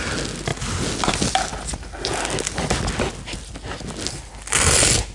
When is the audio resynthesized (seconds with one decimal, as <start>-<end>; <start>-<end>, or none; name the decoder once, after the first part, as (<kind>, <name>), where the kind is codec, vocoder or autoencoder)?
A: none